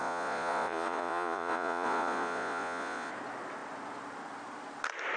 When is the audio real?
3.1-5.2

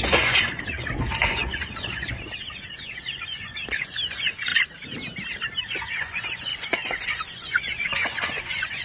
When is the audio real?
4.5-5.6

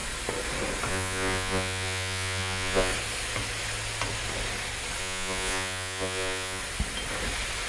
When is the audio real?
0.0-0.9; 2.9-5.0; 6.6-7.7

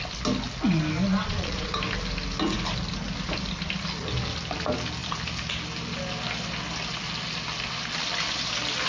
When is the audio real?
0.0-1.1; 1.7-8.9

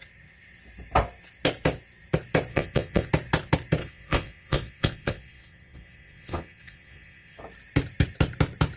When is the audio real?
0.0-2.5; 3.1-3.8; 7.4-8.8

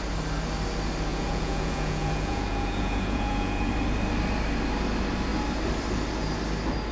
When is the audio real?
0.0-1.1; 3.7-6.9

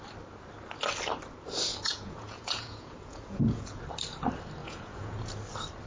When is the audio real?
0.0-1.7; 3.8-4.6; 5.3-5.9

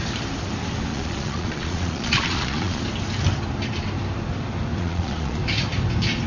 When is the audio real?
0.0-0.9; 2.8-4.8; 5.4-6.3